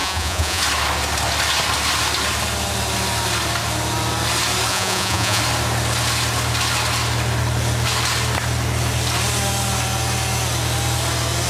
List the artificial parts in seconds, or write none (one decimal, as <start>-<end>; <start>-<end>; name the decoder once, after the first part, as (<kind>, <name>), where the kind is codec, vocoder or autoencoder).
0.0-0.6 (vocoder, Vocos); 4.7-5.4